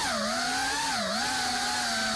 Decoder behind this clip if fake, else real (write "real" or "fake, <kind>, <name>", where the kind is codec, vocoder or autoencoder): real